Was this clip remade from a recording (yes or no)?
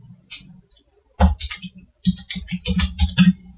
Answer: no